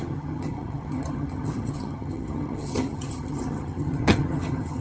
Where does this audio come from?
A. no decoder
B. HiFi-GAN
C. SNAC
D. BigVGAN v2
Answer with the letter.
B